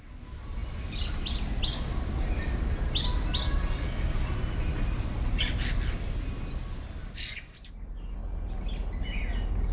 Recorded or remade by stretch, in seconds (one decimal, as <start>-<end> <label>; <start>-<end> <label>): 0.0-9.7 recorded